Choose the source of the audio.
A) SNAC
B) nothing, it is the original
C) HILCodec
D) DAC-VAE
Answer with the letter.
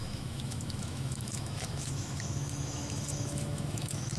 D